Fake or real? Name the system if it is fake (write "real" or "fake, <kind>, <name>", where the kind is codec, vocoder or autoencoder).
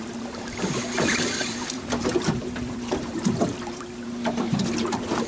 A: fake, vocoder, BigVGAN v2